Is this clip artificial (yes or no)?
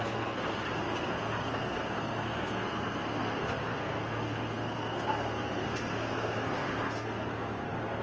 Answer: yes